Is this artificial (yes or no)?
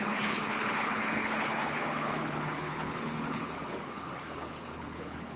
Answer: yes